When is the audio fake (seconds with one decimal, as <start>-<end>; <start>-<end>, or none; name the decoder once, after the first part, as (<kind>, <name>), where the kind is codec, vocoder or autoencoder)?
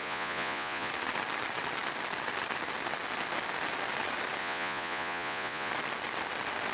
0.0-0.9 (vocoder, Vocos); 4.4-5.7